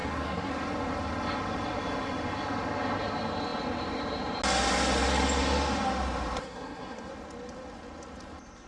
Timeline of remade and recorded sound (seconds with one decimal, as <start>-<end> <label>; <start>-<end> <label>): 0.0-0.5 remade; 0.5-6.4 recorded; 6.4-7.1 remade; 7.1-8.7 recorded